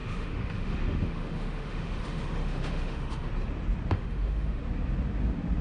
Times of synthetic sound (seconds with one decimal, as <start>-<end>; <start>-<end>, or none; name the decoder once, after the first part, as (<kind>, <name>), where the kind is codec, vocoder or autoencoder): 0.0-3.3 (autoencoder, DAC-VAE); 3.9-4.6